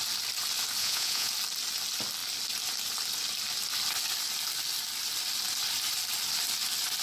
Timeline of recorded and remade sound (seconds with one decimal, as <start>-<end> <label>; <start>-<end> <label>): 0.0-0.8 recorded; 0.8-1.3 remade; 1.3-7.0 recorded